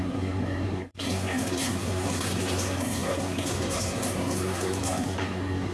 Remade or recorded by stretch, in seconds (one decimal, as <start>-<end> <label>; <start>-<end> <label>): 0.0-5.7 remade